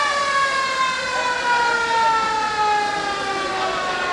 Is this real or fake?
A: real